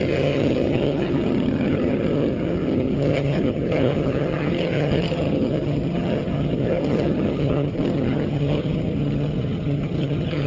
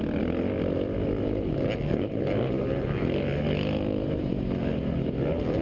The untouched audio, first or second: second